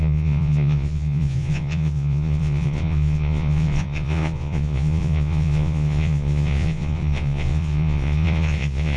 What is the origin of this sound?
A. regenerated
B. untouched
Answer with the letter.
A